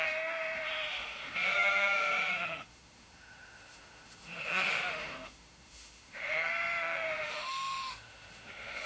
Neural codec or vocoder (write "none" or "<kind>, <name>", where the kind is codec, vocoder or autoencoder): autoencoder, DAC-VAE